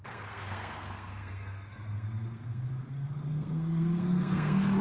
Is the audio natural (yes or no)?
no